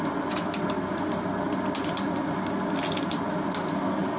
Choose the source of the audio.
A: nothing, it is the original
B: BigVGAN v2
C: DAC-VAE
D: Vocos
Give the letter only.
A